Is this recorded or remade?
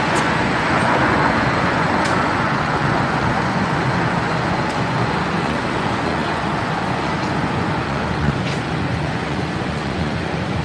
remade